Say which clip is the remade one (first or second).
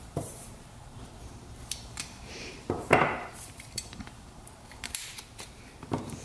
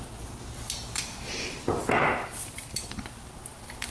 first